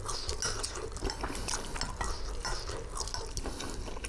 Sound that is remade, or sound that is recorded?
recorded